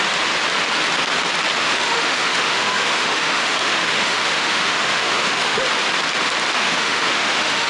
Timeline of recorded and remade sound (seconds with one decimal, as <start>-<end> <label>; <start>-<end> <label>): 0.0-1.6 recorded; 1.6-5.6 remade; 5.6-6.6 recorded; 6.6-7.7 remade